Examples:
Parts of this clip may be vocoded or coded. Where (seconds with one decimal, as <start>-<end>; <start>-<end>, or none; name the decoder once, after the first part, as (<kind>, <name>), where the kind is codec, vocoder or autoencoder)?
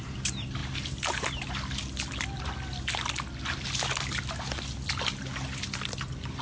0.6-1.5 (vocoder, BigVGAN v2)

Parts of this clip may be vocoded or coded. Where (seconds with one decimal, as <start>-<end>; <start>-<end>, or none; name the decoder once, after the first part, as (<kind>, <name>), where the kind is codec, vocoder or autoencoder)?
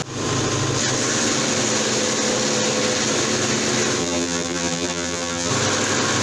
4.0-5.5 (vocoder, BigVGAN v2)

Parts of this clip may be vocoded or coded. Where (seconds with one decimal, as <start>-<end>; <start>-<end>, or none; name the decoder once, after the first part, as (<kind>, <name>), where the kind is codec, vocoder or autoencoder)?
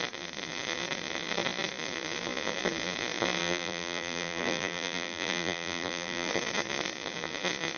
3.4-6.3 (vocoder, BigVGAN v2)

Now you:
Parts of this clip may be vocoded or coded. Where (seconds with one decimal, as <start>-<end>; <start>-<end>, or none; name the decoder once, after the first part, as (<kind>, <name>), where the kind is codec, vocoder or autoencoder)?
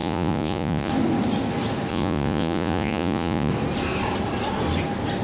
0.0-0.9 (vocoder, Vocos); 1.9-3.5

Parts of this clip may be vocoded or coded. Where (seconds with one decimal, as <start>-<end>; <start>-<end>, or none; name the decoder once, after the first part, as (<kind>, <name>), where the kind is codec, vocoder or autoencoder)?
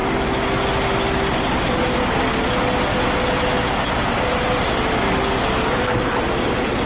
none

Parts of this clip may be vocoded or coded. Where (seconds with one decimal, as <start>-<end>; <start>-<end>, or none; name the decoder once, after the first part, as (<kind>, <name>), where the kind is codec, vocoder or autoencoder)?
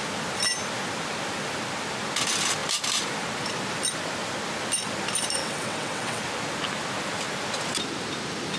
5.4-6.2 (vocoder, WaveNeXt)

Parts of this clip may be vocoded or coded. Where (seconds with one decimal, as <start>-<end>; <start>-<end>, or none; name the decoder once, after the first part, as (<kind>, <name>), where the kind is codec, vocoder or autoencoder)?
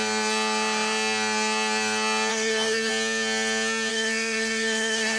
2.3-2.9 (codec, SNAC); 3.9-5.2